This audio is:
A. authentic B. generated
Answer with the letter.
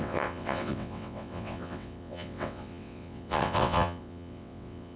B